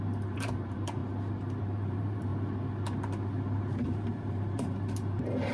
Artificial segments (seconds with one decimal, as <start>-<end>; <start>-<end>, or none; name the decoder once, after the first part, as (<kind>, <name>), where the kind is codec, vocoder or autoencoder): 0.0-1.0 (vocoder, BigVGAN v2); 1.6-2.3; 3.8-5.5